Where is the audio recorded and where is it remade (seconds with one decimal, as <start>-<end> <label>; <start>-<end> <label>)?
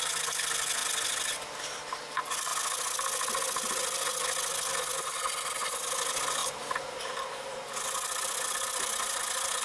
0.0-9.6 recorded